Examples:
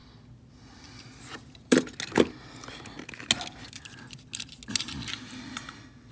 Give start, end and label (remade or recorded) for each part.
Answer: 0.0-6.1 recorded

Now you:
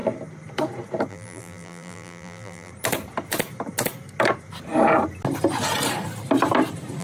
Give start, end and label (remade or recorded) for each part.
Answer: 0.0-1.1 recorded; 1.1-2.7 remade; 2.7-7.0 recorded